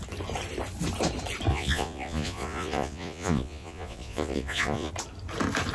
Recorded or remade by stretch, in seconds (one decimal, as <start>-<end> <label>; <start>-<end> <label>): 0.0-1.5 recorded; 1.5-4.9 remade; 4.9-5.7 recorded